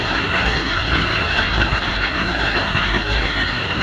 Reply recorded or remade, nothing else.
remade